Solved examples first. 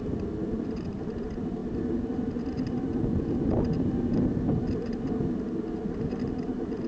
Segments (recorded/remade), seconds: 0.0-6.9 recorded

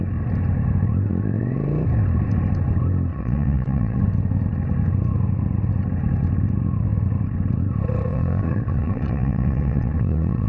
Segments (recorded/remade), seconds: 0.0-3.1 recorded; 3.1-4.0 remade; 4.0-8.1 recorded; 8.1-10.5 remade

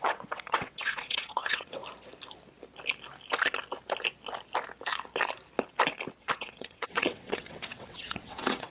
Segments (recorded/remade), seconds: 0.0-1.8 remade; 1.8-6.2 recorded; 6.2-8.7 remade

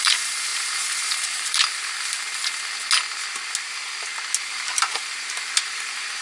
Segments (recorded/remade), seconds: 0.0-2.3 remade; 2.3-4.4 recorded; 4.4-6.2 remade

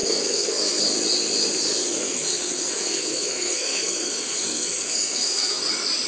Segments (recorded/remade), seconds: 0.0-0.8 remade; 0.8-1.9 recorded; 1.9-5.6 remade; 5.6-6.1 recorded